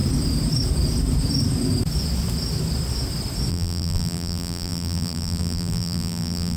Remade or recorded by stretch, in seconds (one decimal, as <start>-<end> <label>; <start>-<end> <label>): 0.0-3.5 recorded; 3.5-6.6 remade